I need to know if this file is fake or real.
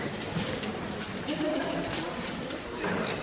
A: fake